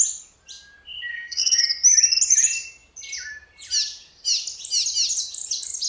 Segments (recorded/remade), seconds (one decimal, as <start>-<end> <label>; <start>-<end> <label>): 0.0-1.1 recorded; 1.1-1.6 remade; 1.6-5.9 recorded